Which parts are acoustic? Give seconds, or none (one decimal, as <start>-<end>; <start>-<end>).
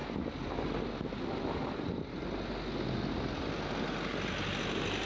0.0-5.1